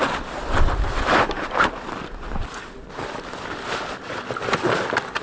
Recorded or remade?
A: recorded